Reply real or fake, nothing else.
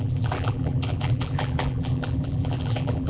fake